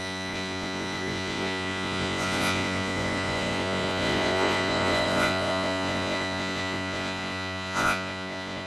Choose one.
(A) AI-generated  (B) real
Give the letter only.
A